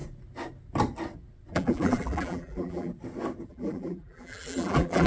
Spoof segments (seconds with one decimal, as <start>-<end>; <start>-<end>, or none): 1.5-2.9; 3.5-5.1